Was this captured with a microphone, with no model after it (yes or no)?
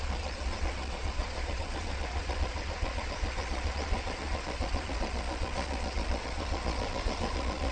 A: no